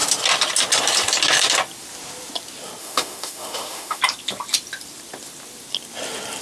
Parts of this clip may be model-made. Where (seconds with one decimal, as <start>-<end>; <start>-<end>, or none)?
2.8-4.0

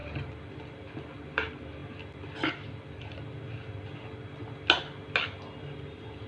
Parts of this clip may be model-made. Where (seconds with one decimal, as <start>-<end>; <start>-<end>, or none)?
none

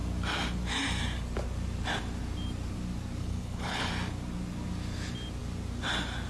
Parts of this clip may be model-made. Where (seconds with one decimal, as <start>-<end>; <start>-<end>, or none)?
3.2-3.9

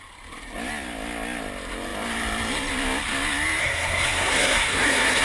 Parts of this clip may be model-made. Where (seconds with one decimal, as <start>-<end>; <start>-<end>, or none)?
3.6-5.2